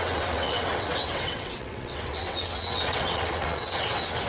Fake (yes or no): yes